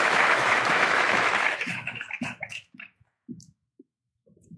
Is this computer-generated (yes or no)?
yes